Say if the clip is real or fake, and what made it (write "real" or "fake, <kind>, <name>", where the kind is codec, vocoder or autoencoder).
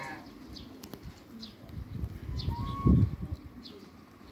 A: real